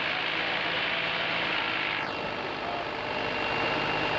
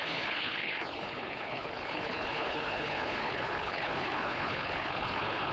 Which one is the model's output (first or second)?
second